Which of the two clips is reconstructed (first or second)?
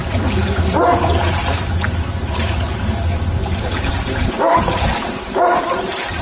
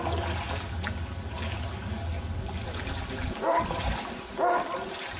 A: first